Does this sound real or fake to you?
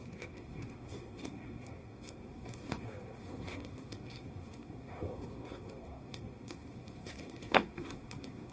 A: fake